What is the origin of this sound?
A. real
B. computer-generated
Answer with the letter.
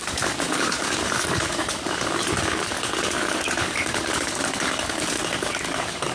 B